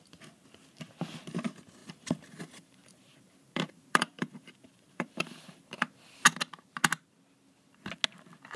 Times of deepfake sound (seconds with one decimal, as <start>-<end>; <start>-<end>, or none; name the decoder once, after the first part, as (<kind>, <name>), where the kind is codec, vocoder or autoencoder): 1.8-5.7 (vocoder, BigVGAN v2)